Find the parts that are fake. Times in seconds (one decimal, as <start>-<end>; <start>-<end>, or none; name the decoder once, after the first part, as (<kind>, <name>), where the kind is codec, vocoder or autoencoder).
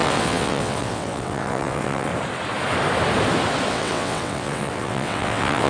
0.0-2.1 (vocoder, WaveNeXt); 3.7-5.7